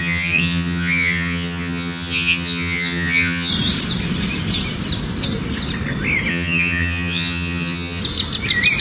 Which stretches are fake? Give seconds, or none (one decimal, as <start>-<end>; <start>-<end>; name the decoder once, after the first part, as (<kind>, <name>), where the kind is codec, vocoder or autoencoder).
0.0-3.5 (vocoder, HiFi-GAN); 6.3-8.0

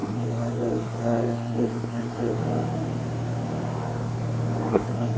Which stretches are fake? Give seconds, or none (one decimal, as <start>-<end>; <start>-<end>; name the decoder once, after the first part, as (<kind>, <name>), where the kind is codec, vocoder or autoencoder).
0.0-2.4 (codec, SNAC); 4.7-5.2

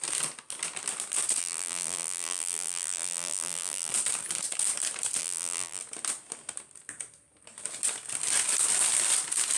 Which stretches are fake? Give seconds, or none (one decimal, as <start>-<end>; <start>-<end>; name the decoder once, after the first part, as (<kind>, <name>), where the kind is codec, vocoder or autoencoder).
1.4-3.9 (vocoder, BigVGAN v2); 5.2-5.8

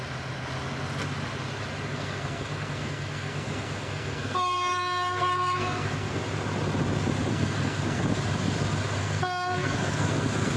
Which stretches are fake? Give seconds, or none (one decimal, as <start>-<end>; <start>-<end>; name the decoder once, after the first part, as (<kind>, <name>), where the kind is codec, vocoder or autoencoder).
1.9-6.2 (codec, SNAC); 7.3-8.0; 9.0-10.6

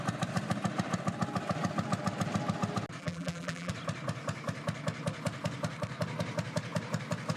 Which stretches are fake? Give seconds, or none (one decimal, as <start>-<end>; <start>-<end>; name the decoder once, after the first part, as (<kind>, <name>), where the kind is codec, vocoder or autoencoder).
3.0-3.7 (vocoder, BigVGAN v2)